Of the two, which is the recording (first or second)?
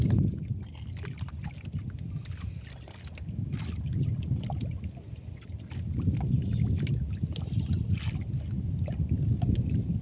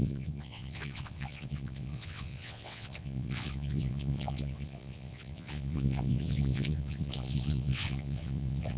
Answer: first